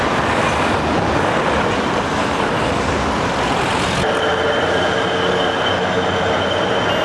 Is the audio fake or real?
real